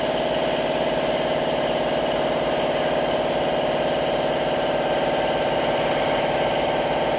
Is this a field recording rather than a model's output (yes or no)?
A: yes